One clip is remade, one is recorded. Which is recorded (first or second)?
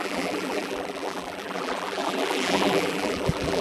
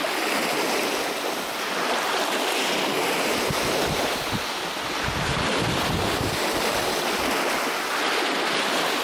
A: second